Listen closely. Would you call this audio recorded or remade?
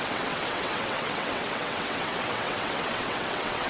remade